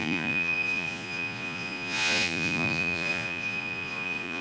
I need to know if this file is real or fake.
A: fake